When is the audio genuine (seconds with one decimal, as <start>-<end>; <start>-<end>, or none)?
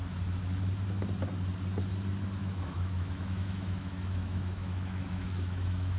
0.0-2.4